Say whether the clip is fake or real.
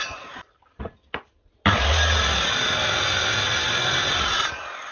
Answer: real